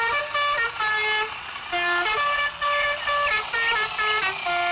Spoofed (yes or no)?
no